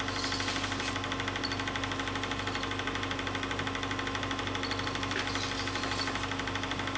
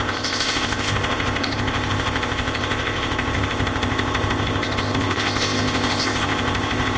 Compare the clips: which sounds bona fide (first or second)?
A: first